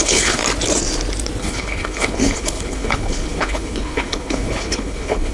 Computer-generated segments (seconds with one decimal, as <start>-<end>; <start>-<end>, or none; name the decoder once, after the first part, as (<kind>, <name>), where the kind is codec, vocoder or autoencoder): 0.0-0.4 (codec, HILCodec); 1.4-5.3